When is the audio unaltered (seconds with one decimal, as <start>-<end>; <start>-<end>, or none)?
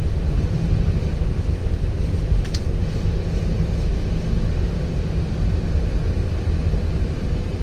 0.0-7.6